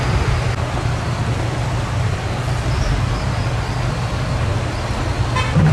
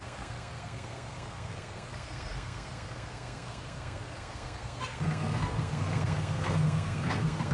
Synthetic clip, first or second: second